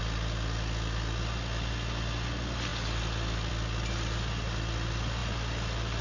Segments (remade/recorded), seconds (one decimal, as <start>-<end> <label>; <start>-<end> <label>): 0.0-6.0 recorded